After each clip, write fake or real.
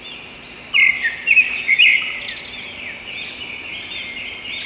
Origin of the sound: real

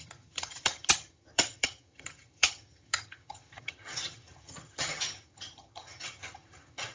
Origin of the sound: fake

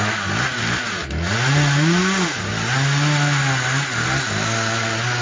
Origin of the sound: real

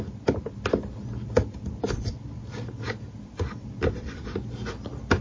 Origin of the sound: real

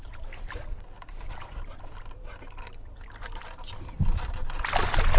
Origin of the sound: real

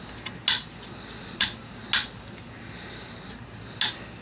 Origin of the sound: real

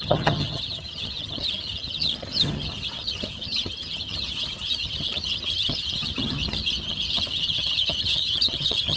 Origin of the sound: fake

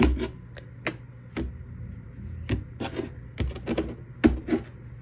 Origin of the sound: real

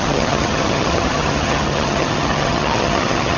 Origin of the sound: fake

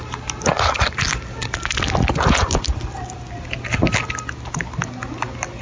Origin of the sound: real